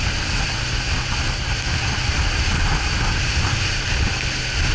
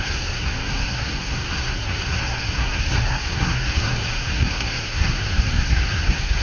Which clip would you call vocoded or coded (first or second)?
second